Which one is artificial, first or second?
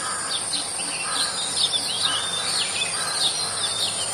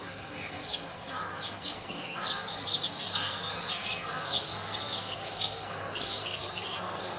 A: second